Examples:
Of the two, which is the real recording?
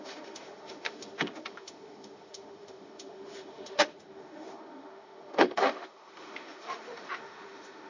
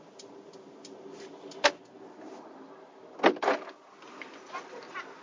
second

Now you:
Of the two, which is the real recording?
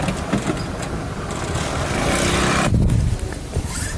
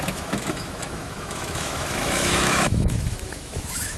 first